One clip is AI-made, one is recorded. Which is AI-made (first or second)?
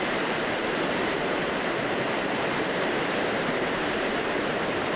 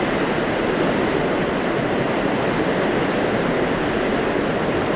first